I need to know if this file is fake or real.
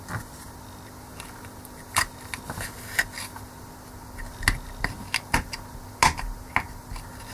real